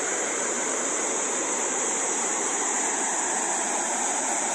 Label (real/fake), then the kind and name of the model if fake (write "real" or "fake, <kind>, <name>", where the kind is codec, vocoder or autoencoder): fake, vocoder, BigVGAN v2